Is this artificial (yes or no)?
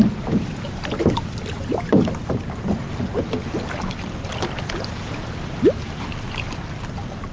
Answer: no